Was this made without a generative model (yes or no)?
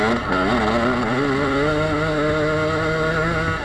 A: yes